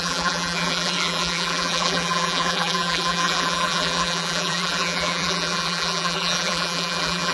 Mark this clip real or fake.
fake